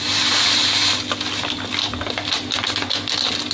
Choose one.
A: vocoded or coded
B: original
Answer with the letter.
B